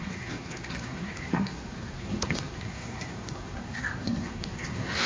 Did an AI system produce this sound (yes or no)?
yes